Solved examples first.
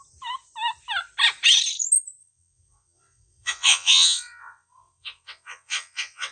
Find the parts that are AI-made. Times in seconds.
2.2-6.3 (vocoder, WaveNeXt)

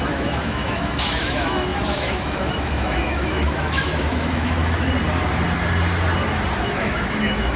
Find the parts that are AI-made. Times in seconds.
0.0-4.6 (autoencoder, DAC-VAE); 6.6-7.6

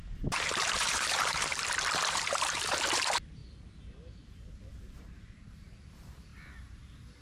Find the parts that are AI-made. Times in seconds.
0.0-1.5 (vocoder, BigVGAN v2); 2.1-3.4; 4.7-6.3

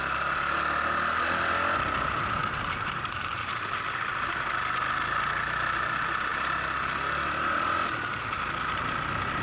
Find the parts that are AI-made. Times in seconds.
2.4-3.8 (vocoder, BigVGAN v2)

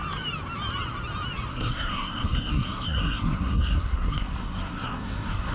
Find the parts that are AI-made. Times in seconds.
1.5-5.5 (codec, SNAC)

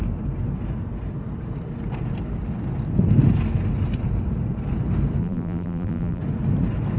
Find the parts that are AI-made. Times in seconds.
5.2-6.2 (vocoder, BigVGAN v2)

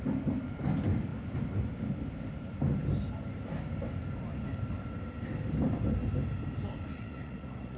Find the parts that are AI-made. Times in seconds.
6.9-7.8 (vocoder, Vocos)

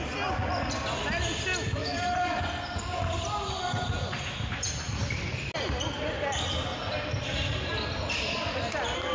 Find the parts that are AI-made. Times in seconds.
1.8-2.4 (vocoder, BigVGAN v2)